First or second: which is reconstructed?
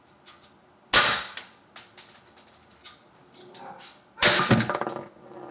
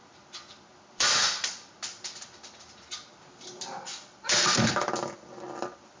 second